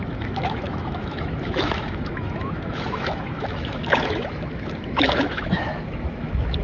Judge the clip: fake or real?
fake